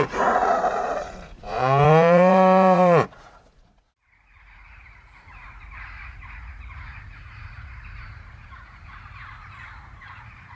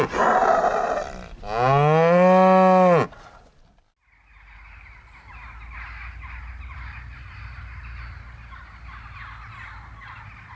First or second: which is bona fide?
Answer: second